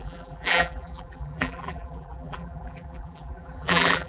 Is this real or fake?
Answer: fake